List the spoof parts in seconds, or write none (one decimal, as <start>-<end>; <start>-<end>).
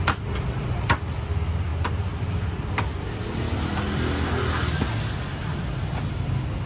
none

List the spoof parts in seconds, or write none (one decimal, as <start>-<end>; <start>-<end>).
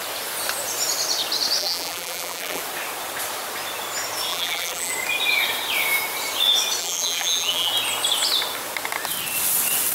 1.6-2.6; 4.3-4.9; 6.8-7.7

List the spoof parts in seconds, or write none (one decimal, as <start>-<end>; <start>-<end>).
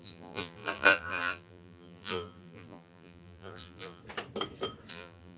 0.0-4.0; 4.9-5.4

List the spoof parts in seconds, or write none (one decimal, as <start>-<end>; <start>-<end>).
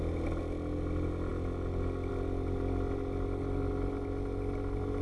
none